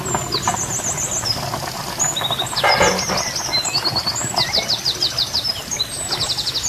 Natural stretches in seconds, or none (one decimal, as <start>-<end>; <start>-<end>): 0.0-6.7